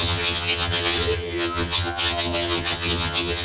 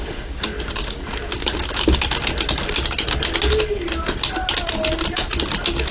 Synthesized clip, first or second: first